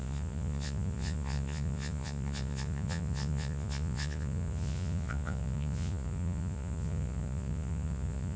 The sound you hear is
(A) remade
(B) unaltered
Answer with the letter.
A